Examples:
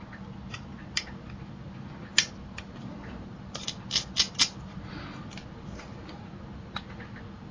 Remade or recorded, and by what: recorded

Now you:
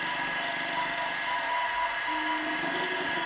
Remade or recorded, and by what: recorded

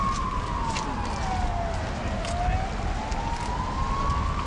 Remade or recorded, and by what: recorded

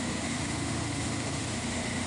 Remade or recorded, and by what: remade, autoencoder, DAC-VAE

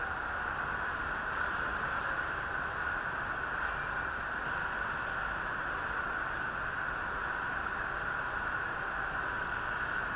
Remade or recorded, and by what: recorded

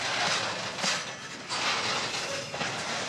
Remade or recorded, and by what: recorded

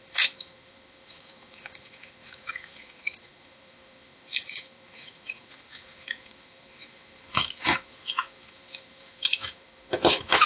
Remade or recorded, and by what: remade, autoencoder, DAC-VAE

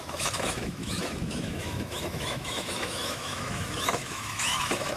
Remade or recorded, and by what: remade, autoencoder, DAC-VAE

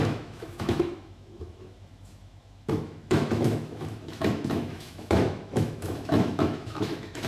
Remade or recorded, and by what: remade, autoencoder, DAC-VAE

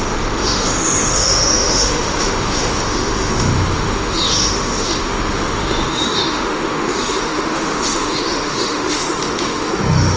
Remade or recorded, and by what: remade, autoencoder, DAC-VAE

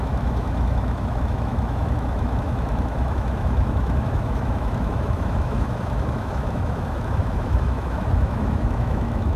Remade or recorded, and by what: remade, autoencoder, DAC-VAE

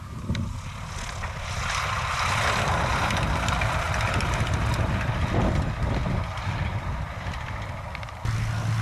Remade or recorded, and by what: recorded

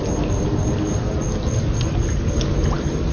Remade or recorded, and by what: recorded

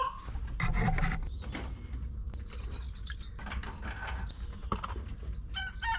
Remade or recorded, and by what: recorded